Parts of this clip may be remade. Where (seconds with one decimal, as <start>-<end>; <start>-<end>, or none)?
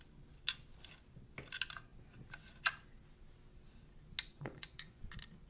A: 4.3-5.0